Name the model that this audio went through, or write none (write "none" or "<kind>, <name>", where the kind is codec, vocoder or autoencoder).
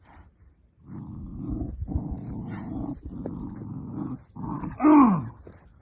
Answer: none